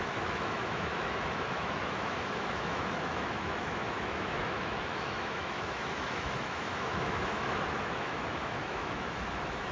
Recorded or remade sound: remade